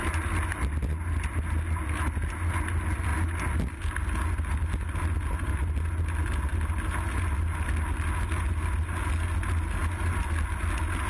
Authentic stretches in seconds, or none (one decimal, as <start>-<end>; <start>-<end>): 0.0-11.1